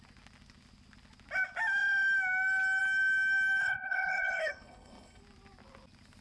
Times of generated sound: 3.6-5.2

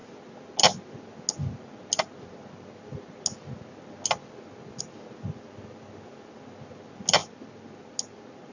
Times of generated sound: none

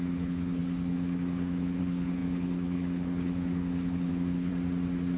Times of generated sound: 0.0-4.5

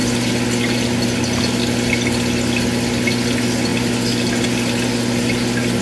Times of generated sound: none

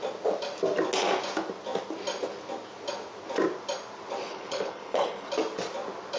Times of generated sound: 4.2-5.3